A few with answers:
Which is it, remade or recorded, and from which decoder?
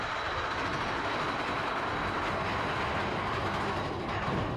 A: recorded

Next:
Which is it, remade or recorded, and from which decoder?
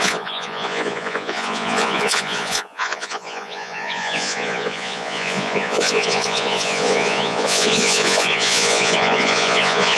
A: remade, vocoder, Vocos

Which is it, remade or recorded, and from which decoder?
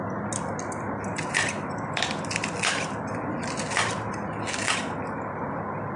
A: recorded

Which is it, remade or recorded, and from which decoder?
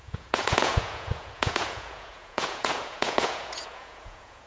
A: remade, vocoder, Vocos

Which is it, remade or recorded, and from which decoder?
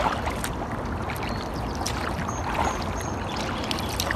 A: recorded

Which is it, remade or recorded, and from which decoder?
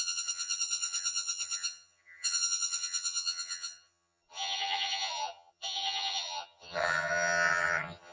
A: remade, vocoder, HiFi-GAN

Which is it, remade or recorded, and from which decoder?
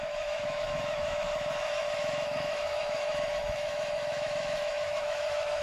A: remade, autoencoder, DAC-VAE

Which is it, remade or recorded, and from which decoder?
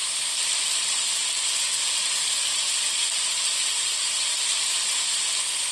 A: remade, vocoder, BigVGAN v2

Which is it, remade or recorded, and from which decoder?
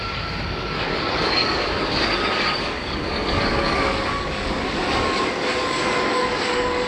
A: remade, codec, DAC